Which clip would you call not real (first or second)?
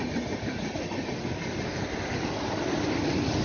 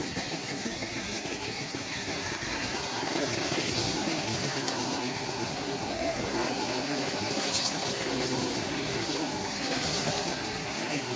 second